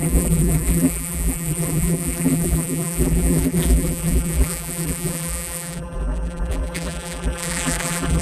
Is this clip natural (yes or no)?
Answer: no